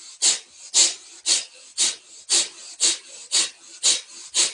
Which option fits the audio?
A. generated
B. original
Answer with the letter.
B